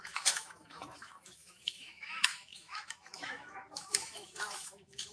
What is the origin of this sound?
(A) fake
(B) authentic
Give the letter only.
A